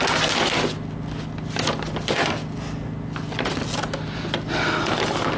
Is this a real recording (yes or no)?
yes